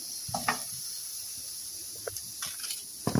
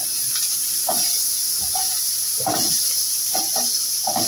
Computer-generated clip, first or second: second